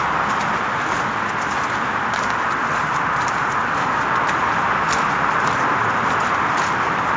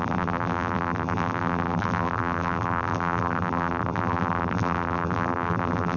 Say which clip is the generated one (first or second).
second